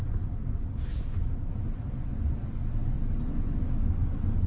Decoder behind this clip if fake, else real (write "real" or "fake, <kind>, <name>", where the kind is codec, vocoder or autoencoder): real